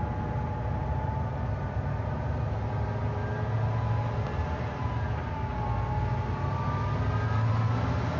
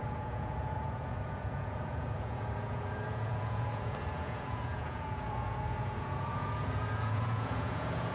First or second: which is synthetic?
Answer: second